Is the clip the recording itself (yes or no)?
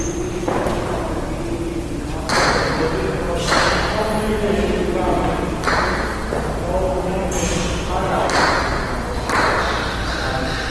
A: yes